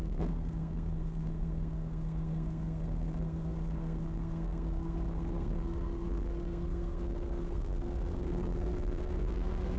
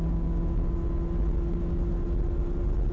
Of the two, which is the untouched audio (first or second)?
second